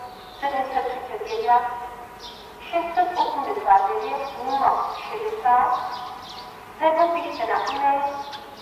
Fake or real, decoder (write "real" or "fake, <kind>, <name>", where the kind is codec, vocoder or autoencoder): real